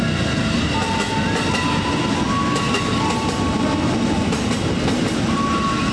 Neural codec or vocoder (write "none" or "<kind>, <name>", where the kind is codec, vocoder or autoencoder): none